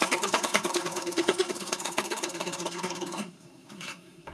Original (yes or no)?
no